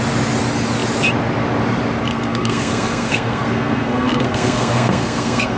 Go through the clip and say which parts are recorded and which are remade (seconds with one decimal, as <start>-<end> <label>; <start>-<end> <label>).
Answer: 0.0-2.1 recorded; 2.1-5.6 remade